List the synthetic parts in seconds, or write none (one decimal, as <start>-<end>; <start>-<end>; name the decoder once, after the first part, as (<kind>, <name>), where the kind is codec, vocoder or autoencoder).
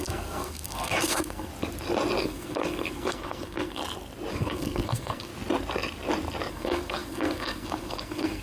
0.0-1.5 (codec, SNAC); 2.2-3.8; 4.3-5.3; 6.5-8.4